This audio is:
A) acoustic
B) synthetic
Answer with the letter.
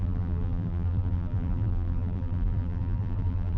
B